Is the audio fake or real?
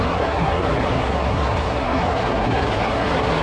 fake